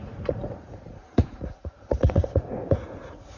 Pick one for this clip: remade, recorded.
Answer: remade